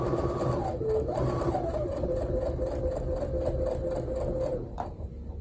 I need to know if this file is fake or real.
real